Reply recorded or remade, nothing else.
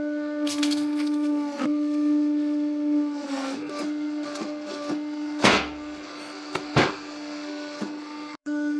remade